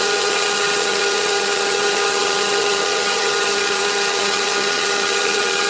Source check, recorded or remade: remade